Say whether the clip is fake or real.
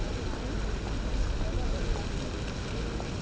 real